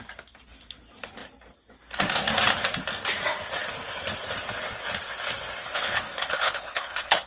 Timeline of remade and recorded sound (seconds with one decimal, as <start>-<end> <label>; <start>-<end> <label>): 0.0-5.6 recorded; 5.6-7.3 remade